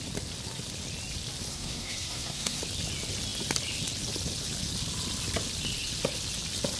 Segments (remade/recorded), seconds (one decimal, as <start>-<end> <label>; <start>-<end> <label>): 0.0-1.5 recorded; 1.5-2.6 remade; 2.6-6.8 recorded